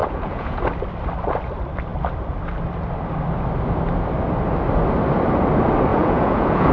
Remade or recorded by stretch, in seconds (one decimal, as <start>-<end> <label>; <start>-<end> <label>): 0.0-0.6 remade; 0.6-5.9 recorded; 5.9-6.7 remade